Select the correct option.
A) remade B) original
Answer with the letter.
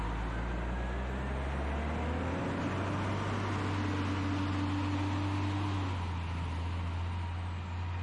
B